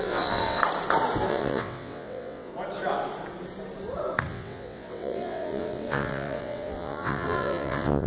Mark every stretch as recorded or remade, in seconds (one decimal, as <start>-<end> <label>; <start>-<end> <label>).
0.0-0.6 remade; 0.6-1.3 recorded; 1.3-2.5 remade; 2.5-4.3 recorded; 4.3-8.1 remade